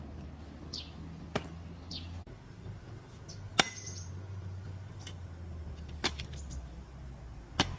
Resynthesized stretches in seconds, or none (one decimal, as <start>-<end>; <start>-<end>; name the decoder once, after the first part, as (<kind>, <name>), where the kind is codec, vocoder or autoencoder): none